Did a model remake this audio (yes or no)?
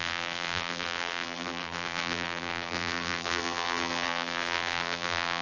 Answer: yes